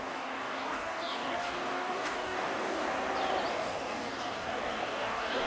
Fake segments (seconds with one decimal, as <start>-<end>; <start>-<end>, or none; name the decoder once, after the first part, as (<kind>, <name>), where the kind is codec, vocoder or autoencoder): 0.0-2.8 (codec, DAC); 3.5-5.5